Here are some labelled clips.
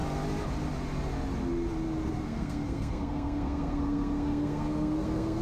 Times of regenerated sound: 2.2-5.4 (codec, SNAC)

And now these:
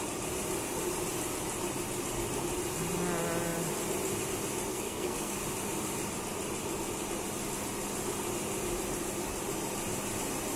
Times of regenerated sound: 4.7-5.4 (codec, SNAC)

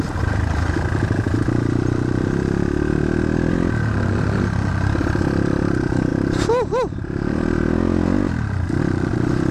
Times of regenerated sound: none

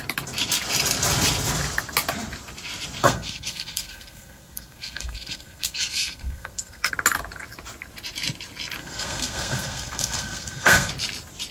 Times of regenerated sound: 3.0-6.9 (codec, SNAC); 8.8-10.9